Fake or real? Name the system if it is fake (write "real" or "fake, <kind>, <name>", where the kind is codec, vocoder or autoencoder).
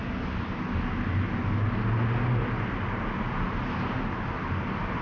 real